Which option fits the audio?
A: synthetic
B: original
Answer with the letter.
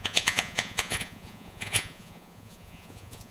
A